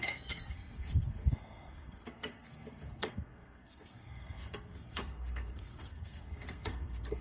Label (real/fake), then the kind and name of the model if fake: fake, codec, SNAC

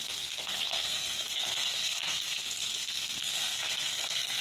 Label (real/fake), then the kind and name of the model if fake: fake, codec, SNAC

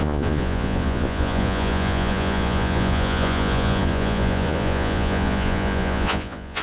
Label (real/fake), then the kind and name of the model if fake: fake, vocoder, Vocos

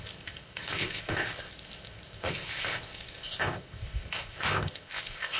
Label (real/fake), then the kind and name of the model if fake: fake, codec, ZipCodec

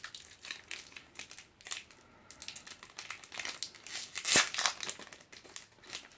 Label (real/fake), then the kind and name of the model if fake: real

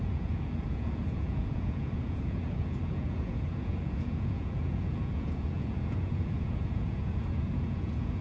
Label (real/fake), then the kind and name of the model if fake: fake, vocoder, Vocos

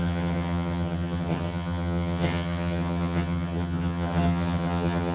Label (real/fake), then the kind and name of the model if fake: fake, vocoder, HiFi-GAN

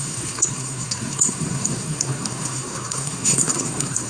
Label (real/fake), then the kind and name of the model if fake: fake, codec, SNAC